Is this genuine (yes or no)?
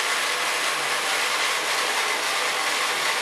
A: yes